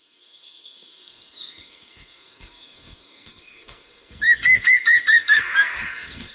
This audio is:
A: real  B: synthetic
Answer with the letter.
B